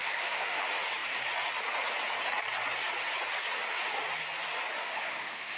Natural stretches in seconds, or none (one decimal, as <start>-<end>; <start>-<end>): 0.6-4.8